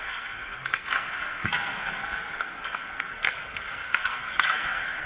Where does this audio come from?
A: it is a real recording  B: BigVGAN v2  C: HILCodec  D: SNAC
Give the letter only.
D